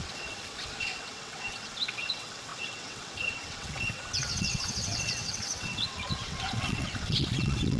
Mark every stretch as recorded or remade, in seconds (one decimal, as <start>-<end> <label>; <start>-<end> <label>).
0.0-7.8 remade